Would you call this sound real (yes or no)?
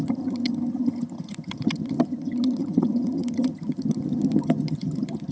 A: no